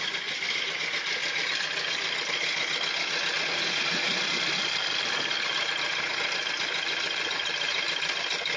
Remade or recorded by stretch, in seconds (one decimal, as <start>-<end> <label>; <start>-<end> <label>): 0.0-8.6 recorded